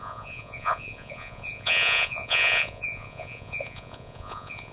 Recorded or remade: remade